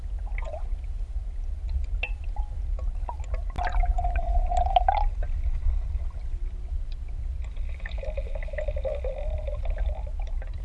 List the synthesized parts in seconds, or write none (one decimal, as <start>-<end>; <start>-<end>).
none